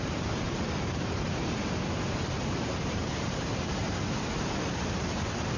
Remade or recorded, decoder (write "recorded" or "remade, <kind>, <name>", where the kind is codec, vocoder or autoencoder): remade, vocoder, BigVGAN v2